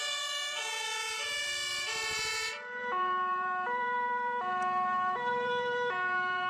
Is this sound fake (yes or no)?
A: yes